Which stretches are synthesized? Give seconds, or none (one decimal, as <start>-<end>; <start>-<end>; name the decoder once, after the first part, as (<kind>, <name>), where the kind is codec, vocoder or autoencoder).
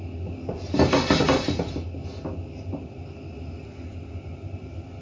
none